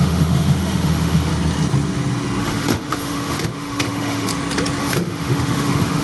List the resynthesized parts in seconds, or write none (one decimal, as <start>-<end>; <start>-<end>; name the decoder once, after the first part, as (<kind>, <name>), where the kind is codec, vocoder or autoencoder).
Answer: 0.0-1.3 (autoencoder, DAC-VAE); 2.4-4.3; 4.8-6.0